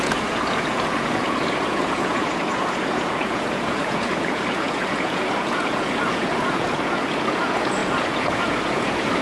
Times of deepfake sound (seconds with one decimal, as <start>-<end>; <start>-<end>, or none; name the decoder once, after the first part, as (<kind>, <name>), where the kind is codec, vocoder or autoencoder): 0.0-9.2 (vocoder, Vocos)